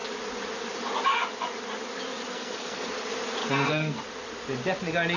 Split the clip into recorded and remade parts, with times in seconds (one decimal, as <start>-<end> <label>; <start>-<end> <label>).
0.0-2.3 recorded; 2.3-2.9 remade; 2.9-3.4 recorded; 3.4-4.0 remade; 4.0-5.2 recorded